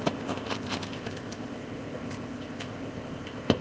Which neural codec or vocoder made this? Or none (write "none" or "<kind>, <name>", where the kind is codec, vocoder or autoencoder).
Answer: codec, ZipCodec